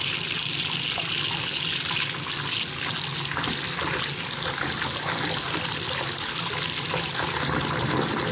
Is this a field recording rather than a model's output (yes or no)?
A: yes